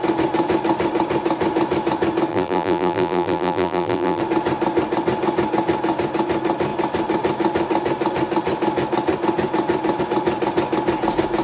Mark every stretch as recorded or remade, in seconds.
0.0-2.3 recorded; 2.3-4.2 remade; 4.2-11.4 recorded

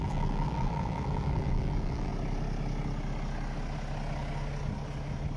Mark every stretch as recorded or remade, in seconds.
0.0-2.1 remade; 2.1-5.4 recorded

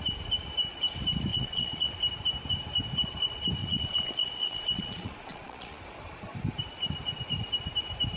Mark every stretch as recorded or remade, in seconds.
0.0-1.3 recorded; 1.3-1.9 remade; 1.9-3.6 recorded; 3.6-5.8 remade; 5.8-8.2 recorded

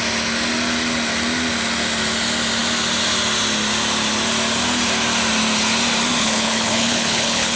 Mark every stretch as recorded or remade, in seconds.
0.0-6.2 recorded; 6.2-7.6 remade

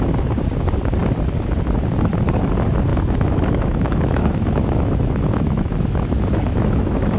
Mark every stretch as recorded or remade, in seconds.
0.0-2.9 recorded; 2.9-7.2 remade